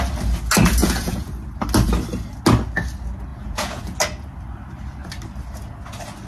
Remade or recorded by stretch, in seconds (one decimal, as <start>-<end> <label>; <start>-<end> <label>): 0.0-0.8 recorded; 0.8-1.3 remade; 1.3-3.3 recorded; 3.3-3.8 remade; 3.8-6.3 recorded